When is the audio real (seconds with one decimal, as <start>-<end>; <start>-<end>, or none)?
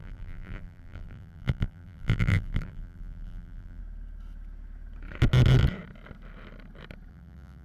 3.8-7.1